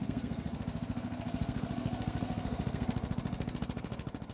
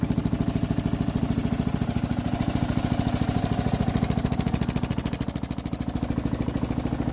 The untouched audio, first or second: second